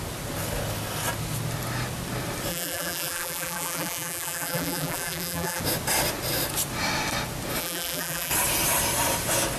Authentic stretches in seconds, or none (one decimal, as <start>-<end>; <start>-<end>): 0.0-2.5; 5.6-7.6; 8.3-9.6